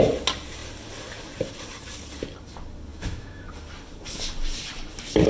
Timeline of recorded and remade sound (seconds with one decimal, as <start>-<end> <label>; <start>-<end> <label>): 0.0-2.9 recorded; 2.9-3.5 remade; 3.5-5.3 recorded